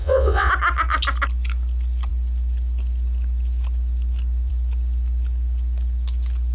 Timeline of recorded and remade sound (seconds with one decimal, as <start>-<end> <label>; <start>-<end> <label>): 0.0-0.5 remade; 0.5-6.5 recorded